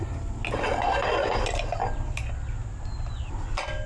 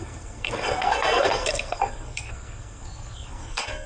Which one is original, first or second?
first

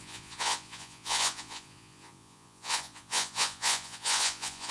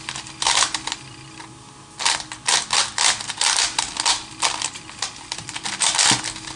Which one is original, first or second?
second